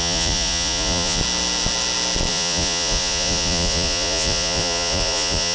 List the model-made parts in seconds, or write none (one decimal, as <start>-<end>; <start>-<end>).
0.0-1.2; 2.3-5.5